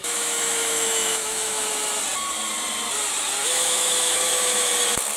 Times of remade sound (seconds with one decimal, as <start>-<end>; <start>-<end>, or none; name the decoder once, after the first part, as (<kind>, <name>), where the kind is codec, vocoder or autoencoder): 0.0-1.7 (autoencoder, DAC-VAE); 3.4-4.7